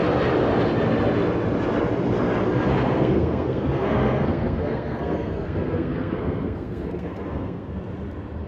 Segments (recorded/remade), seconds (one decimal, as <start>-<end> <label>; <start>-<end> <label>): 0.0-2.7 recorded; 2.7-7.8 remade; 7.8-8.5 recorded